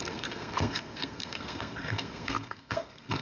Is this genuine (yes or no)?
no